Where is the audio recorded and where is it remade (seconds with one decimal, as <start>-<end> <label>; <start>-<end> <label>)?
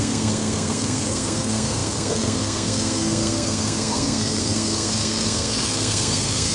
0.0-6.5 remade